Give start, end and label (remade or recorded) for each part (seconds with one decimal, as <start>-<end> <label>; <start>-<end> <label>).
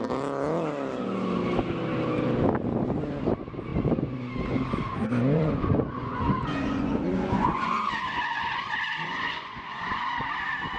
0.0-3.7 recorded; 3.7-4.3 remade; 4.3-4.9 recorded; 4.9-10.1 remade; 10.1-10.8 recorded